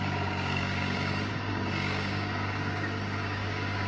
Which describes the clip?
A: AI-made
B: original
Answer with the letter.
A